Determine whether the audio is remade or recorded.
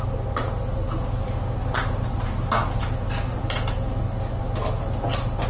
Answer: recorded